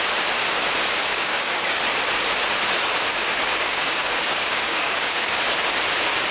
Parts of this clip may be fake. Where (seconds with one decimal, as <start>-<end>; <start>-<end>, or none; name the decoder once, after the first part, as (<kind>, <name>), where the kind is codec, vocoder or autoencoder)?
1.0-1.8 (codec, DAC); 3.1-5.4